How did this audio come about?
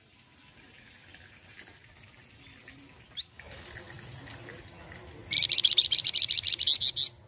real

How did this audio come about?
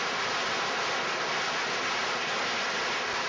real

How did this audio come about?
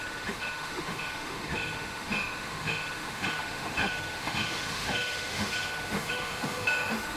fake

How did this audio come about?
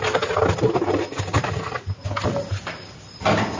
real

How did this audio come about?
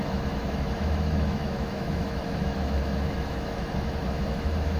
fake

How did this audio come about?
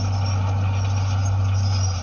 real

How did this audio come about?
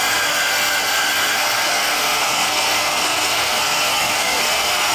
fake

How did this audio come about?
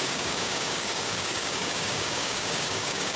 fake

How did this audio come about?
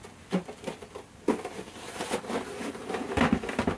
real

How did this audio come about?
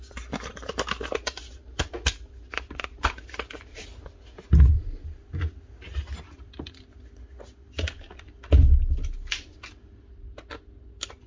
real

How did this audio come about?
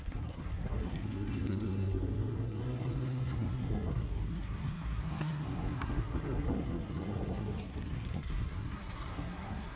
fake